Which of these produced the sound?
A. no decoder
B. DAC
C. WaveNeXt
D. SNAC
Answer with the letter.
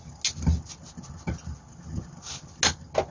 A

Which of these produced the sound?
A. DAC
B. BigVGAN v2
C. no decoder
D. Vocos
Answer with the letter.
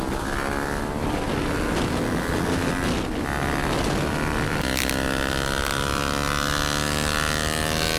C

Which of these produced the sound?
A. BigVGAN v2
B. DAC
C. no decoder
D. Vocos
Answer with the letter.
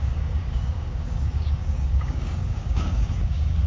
B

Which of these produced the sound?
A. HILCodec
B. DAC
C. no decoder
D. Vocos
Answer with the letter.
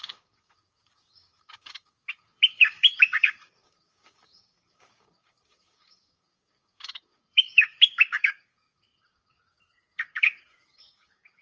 B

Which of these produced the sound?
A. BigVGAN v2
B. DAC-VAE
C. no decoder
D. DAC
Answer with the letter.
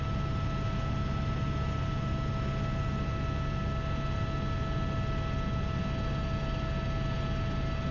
C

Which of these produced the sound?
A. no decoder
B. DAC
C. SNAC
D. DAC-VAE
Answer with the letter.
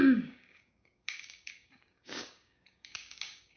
B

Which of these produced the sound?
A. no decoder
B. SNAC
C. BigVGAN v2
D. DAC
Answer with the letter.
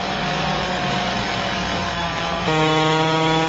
D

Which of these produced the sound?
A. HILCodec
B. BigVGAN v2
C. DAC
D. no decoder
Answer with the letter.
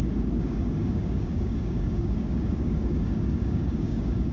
C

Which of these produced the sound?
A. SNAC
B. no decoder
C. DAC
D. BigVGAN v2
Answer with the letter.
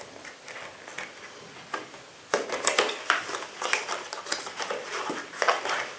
B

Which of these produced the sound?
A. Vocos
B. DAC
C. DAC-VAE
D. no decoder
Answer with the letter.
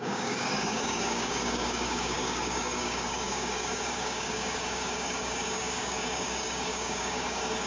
B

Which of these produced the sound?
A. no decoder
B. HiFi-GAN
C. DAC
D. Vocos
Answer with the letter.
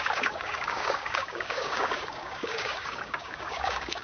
C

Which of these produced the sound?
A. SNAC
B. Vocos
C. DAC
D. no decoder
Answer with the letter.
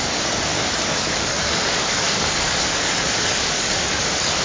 C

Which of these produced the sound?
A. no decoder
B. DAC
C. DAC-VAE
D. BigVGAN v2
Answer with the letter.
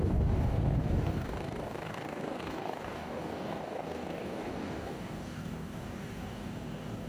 B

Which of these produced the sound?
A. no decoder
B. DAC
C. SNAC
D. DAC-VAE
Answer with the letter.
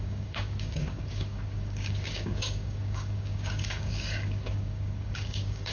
B